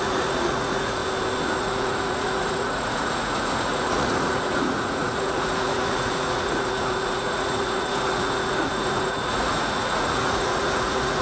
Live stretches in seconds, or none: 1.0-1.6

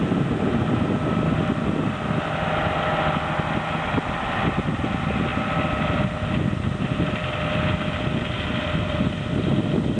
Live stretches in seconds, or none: 0.0-10.0

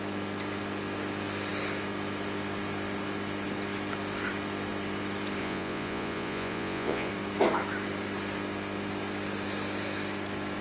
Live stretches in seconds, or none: 0.0-5.4; 7.1-10.6

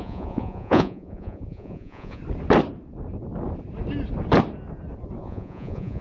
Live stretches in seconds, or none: 2.2-5.2

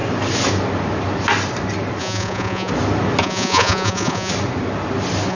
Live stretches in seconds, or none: 0.0-2.0; 2.7-3.2; 4.3-5.3

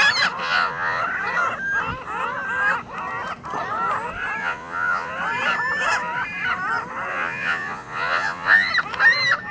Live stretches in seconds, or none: 0.0-0.4; 1.0-4.4; 5.1-7.1; 8.7-9.5

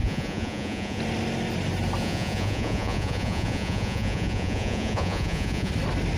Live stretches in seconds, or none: 1.0-2.0; 5.7-6.2